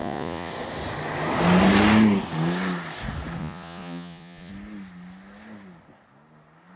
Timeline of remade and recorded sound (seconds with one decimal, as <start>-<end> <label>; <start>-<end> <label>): 0.0-0.5 remade; 0.5-3.4 recorded; 3.4-4.5 remade; 4.5-6.8 recorded